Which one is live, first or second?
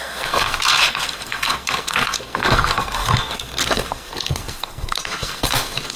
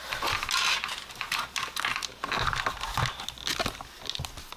second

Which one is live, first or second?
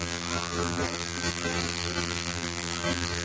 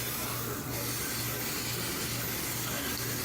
second